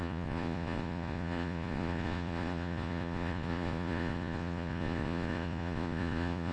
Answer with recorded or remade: remade